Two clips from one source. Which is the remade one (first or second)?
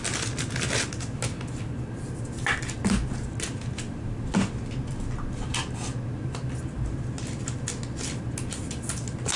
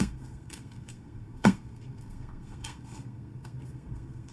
second